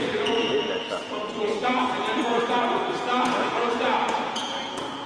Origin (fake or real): fake